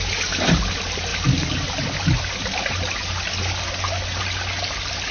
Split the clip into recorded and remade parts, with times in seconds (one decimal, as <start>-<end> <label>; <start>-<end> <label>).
0.0-5.1 recorded